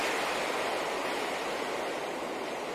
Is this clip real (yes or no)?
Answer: yes